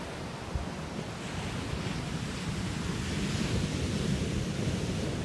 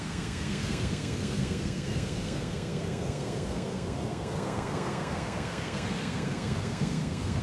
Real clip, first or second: first